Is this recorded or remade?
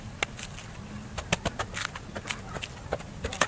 recorded